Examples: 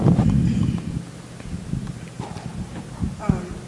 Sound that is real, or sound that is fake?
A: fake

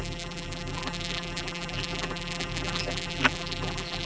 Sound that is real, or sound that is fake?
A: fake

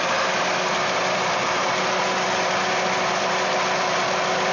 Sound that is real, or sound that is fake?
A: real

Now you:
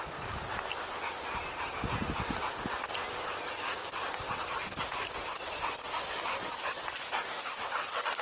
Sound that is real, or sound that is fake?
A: real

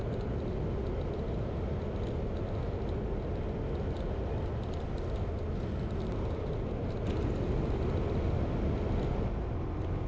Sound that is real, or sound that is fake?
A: real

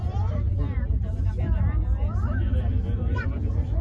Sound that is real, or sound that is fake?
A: fake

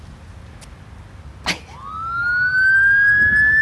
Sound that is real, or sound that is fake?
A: real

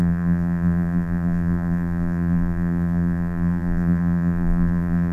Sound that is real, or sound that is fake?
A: fake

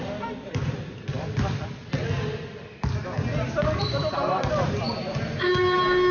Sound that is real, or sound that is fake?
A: real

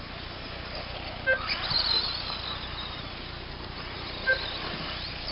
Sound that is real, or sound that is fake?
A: real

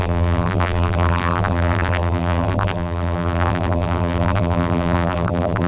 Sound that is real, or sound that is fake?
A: fake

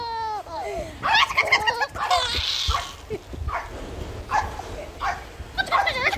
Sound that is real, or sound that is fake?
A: real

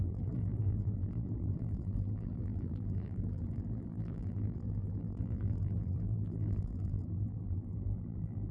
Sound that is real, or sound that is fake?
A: fake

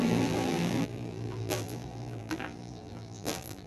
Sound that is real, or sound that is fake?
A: fake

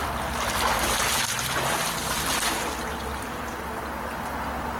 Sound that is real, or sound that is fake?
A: real